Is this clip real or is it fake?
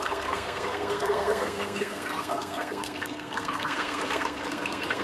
fake